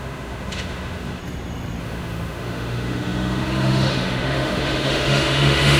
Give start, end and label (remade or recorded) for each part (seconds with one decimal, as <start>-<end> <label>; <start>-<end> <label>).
0.0-1.2 remade; 1.2-1.8 recorded; 1.8-5.8 remade